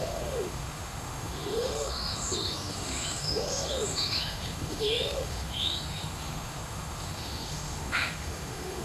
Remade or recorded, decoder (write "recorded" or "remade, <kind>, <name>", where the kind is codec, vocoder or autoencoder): remade, autoencoder, DAC-VAE